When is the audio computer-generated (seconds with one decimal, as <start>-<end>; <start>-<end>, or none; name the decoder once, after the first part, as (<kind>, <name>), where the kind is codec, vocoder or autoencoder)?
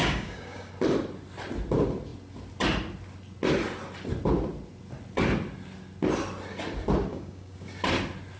0.0-0.7 (codec, DAC); 7.1-7.7